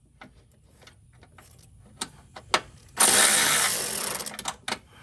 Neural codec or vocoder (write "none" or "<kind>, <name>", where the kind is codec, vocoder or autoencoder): none